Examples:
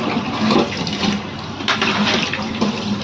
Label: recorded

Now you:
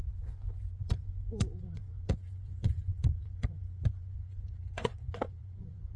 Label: remade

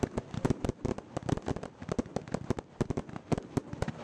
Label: recorded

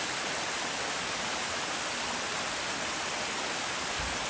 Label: recorded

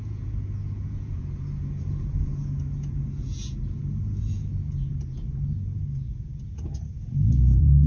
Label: remade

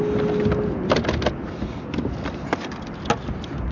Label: recorded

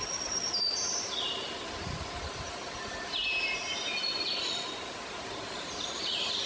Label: recorded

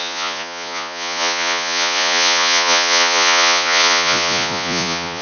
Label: remade